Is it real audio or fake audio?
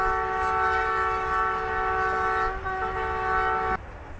real